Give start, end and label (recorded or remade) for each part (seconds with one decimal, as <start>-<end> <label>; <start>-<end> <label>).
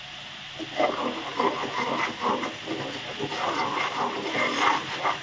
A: 0.0-5.2 recorded